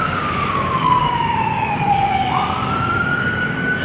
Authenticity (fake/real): fake